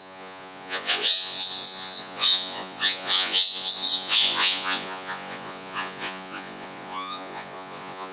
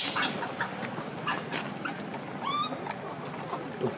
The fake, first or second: first